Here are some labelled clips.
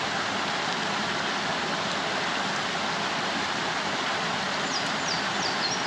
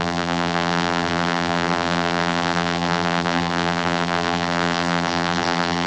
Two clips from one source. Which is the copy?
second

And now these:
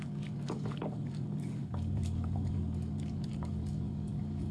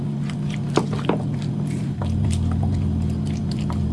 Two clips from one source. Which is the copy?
first